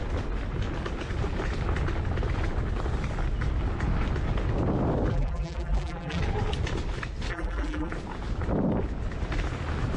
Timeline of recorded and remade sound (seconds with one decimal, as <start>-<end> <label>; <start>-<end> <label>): 0.0-5.1 recorded; 5.1-6.2 remade; 6.2-7.3 recorded; 7.3-7.9 remade; 7.9-10.0 recorded